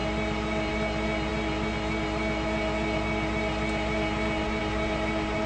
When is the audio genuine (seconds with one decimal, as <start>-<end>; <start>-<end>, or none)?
0.0-5.5